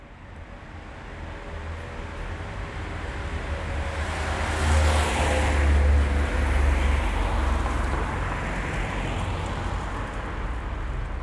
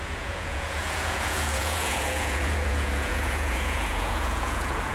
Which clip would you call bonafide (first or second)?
first